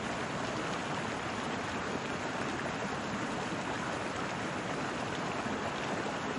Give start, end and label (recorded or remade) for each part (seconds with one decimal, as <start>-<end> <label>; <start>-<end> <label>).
0.0-6.4 recorded